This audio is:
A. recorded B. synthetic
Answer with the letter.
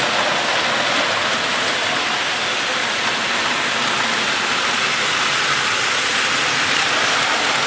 A